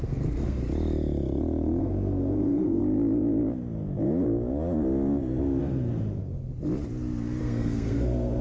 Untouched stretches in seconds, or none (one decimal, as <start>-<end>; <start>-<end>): 0.6-1.8; 2.8-5.6; 6.2-7.4